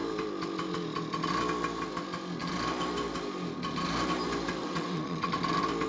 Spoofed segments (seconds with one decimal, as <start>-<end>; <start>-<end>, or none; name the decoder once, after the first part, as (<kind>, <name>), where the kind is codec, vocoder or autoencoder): 4.6-5.3 (vocoder, WaveNeXt)